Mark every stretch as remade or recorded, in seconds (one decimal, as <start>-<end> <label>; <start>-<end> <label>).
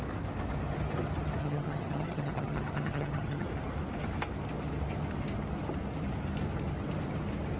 0.0-1.4 recorded; 1.4-3.5 remade; 3.5-7.6 recorded